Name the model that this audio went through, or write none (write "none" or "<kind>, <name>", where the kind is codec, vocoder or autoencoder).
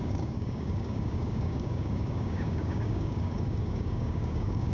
codec, DAC